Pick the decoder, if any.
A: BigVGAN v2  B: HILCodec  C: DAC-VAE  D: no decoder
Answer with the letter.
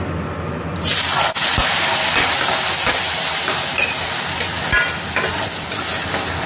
D